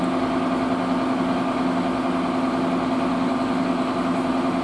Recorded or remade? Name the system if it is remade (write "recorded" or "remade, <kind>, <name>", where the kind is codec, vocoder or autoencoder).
recorded